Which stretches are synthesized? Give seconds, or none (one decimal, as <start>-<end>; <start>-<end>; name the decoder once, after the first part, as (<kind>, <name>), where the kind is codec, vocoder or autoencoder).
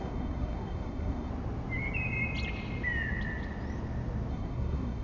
0.0-1.3 (codec, SNAC); 4.3-5.0